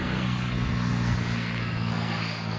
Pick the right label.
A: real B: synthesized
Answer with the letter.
B